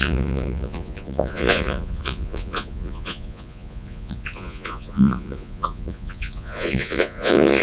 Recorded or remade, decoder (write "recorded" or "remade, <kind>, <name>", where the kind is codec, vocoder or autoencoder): remade, vocoder, Vocos